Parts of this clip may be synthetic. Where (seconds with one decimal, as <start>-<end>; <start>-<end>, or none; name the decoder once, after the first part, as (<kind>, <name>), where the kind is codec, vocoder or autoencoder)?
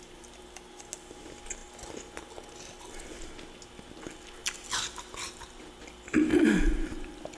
none